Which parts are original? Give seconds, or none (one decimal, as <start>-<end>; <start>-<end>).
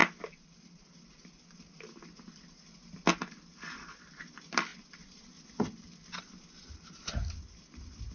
0.0-8.1